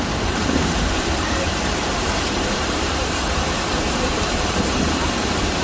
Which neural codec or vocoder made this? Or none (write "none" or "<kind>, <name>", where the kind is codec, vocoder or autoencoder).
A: vocoder, BigVGAN v2